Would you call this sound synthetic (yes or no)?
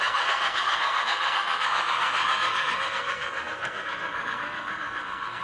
yes